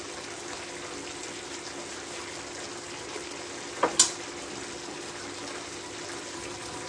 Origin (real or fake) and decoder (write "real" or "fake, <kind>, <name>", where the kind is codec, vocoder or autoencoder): real